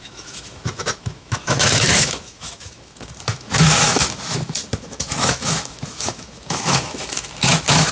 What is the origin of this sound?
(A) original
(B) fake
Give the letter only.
B